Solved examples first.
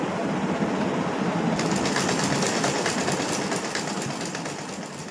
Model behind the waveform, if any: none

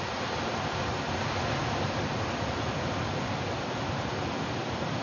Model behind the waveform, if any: none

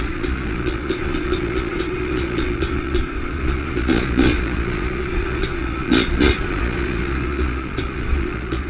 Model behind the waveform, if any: vocoder, Vocos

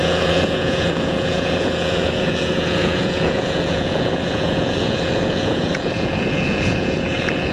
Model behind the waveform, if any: vocoder, Vocos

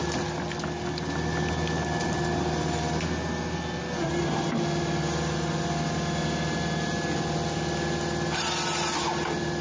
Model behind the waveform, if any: none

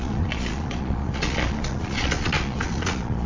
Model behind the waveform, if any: vocoder, Vocos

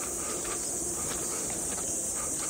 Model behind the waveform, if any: none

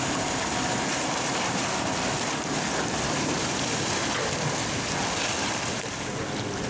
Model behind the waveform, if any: none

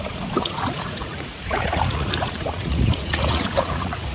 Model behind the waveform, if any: vocoder, Vocos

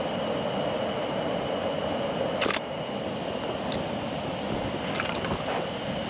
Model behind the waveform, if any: none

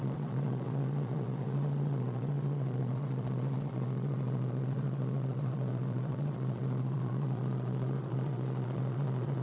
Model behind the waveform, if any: vocoder, Vocos